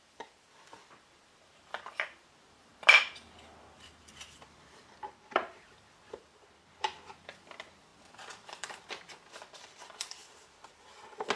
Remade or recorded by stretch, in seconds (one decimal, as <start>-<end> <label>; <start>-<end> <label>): 0.0-10.2 remade; 10.2-11.4 recorded